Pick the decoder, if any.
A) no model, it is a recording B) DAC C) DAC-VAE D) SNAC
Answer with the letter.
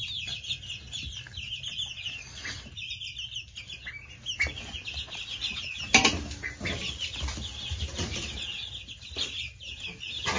A